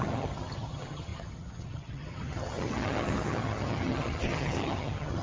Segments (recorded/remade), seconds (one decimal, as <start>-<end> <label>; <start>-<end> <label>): 0.0-5.2 remade